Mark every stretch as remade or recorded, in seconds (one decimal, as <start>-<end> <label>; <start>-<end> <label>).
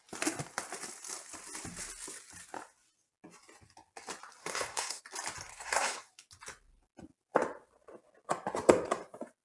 0.0-4.4 recorded; 4.4-5.0 remade; 5.0-5.5 recorded; 5.5-6.1 remade; 6.1-9.4 recorded